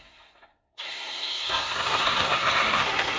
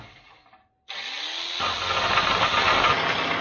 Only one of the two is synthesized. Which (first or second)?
first